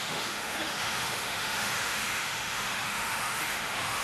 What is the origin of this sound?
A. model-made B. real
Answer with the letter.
A